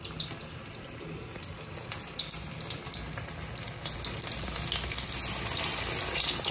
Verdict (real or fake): real